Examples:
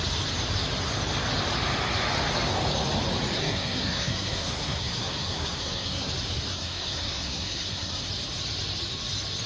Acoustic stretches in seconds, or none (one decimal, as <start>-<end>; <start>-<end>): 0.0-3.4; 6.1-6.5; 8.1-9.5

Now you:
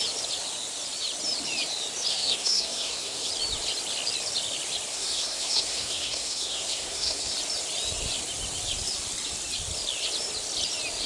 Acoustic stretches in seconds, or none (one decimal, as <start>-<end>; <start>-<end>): 0.0-2.1; 3.3-4.9; 7.3-11.1

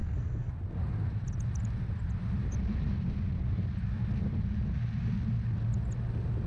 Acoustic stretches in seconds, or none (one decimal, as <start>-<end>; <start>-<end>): 0.5-6.5

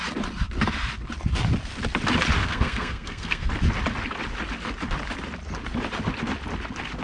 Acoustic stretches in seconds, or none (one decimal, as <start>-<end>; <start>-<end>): 0.0-2.4; 3.5-7.0

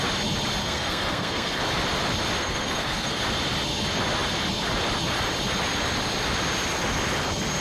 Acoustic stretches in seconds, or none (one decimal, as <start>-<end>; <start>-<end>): 0.0-0.6; 1.6-2.4; 3.2-7.6